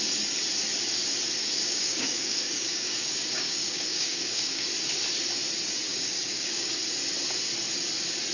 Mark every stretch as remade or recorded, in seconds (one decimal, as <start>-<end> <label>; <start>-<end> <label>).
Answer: 0.0-1.4 recorded; 1.4-4.7 remade; 4.7-5.9 recorded; 5.9-6.8 remade; 6.8-8.3 recorded